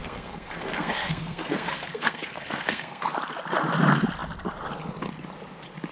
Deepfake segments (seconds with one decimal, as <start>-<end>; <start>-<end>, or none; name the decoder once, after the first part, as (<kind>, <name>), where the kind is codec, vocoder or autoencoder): 0.0-3.0 (codec, SNAC)